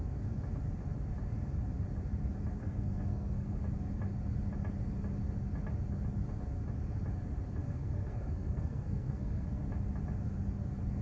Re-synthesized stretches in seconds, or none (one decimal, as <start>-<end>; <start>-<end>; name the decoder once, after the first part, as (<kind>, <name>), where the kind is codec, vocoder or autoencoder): 2.6-3.6 (codec, SNAC); 7.6-9.6